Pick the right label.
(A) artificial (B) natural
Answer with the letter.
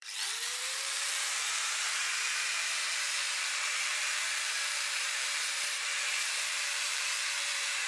A